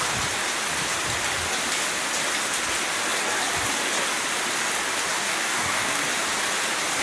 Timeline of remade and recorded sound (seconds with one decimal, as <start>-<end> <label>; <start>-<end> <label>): 0.0-5.2 recorded; 5.2-6.0 remade; 6.0-7.0 recorded